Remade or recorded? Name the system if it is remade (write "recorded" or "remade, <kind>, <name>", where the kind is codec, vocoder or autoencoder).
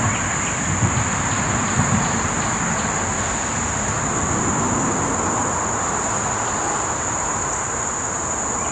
recorded